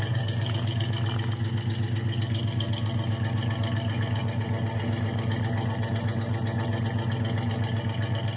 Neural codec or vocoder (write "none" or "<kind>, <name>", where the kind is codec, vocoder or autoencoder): none